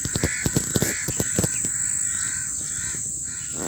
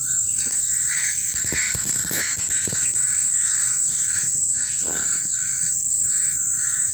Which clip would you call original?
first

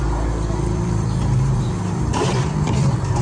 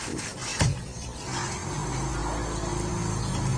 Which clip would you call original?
second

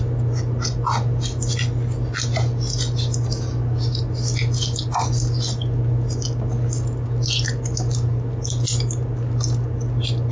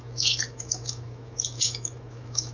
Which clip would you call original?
first